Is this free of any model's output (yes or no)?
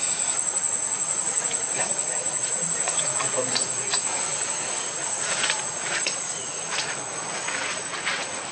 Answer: no